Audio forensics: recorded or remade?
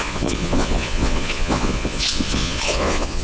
remade